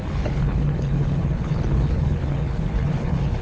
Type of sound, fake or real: fake